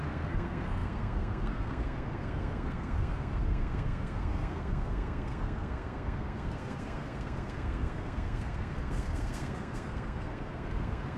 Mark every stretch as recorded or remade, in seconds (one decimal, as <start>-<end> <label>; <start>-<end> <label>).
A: 0.0-11.2 remade